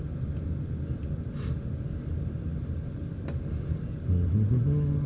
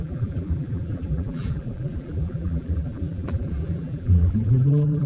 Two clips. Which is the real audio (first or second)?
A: first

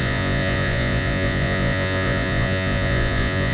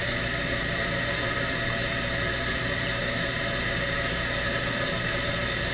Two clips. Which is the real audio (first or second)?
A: second